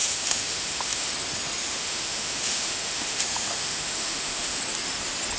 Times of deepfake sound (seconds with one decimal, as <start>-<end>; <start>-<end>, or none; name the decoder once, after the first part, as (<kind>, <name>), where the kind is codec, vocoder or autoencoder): 0.0-1.1 (autoencoder, DAC-VAE); 1.6-4.6